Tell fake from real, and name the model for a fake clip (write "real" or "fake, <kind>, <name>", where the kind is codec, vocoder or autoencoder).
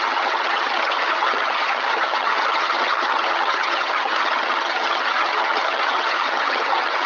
fake, vocoder, HiFi-GAN